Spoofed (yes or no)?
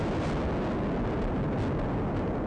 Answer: no